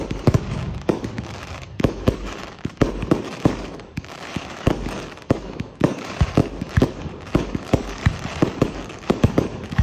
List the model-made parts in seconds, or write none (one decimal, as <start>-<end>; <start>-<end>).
0.0-8.0; 8.6-9.8